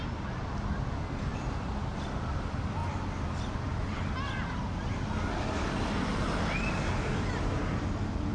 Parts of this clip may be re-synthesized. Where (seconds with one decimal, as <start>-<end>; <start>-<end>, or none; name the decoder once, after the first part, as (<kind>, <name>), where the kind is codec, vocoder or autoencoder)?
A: none